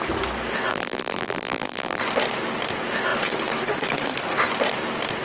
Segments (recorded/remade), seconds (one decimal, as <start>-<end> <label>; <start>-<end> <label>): 0.0-0.7 recorded; 0.7-2.0 remade; 2.0-5.2 recorded